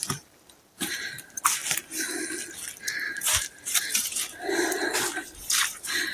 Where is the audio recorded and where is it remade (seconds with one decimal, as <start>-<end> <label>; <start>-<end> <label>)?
0.0-0.6 recorded; 0.6-1.6 remade; 1.6-3.0 recorded; 3.0-6.1 remade